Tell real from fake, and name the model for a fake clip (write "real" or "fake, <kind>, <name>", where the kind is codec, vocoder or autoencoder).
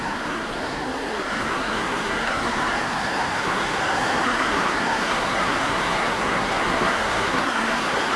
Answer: fake, codec, SNAC